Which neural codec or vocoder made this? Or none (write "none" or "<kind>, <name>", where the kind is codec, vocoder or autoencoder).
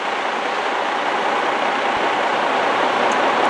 none